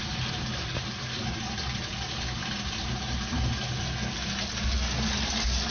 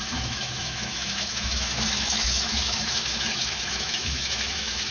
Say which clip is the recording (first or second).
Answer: first